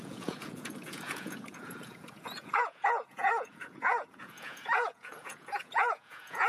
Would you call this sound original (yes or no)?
no